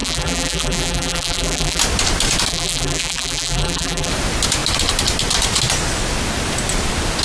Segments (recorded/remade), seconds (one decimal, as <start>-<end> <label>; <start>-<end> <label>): 0.0-1.8 remade; 1.8-2.5 recorded; 2.5-4.1 remade; 4.1-7.2 recorded